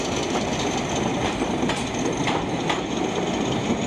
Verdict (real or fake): real